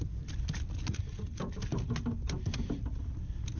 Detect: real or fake real